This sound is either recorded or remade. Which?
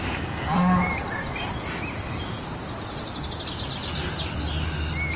recorded